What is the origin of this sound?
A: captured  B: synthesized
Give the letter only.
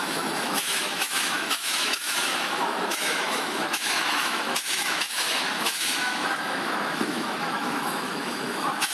B